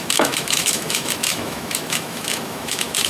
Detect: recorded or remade remade